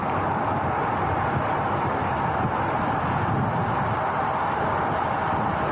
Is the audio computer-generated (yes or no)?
no